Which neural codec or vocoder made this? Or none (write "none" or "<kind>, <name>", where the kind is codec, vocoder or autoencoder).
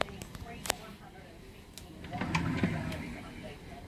none